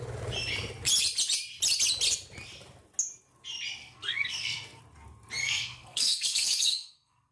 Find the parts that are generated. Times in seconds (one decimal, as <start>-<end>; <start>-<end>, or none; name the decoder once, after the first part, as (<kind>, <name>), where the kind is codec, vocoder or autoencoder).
3.8-4.8 (codec, SNAC); 5.4-7.3